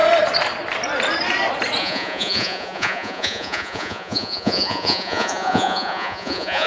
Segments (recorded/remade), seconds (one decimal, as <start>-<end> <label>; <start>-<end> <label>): 0.0-1.8 recorded; 1.8-6.7 remade